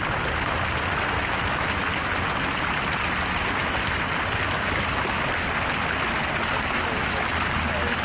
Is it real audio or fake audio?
real